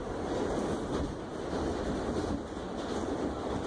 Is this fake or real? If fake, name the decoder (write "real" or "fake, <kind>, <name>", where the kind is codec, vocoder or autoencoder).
real